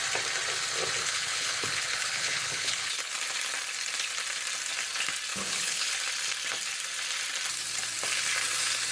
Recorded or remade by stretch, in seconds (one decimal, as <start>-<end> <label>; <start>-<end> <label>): 0.0-1.0 recorded; 1.0-3.1 remade; 3.1-5.3 recorded; 5.3-5.9 remade; 5.9-8.9 recorded